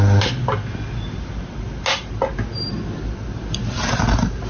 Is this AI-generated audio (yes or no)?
no